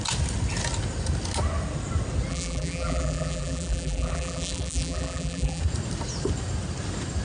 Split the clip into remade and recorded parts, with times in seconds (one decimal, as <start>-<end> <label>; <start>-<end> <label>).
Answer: 0.0-2.3 recorded; 2.3-5.6 remade; 5.6-7.2 recorded